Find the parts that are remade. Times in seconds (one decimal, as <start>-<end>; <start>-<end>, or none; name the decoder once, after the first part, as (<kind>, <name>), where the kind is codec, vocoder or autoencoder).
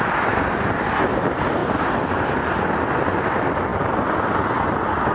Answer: none